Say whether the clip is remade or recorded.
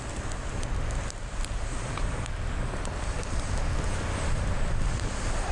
recorded